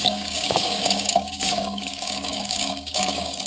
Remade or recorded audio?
remade